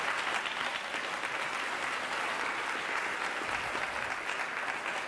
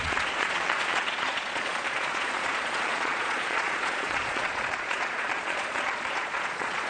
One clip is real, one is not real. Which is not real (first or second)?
second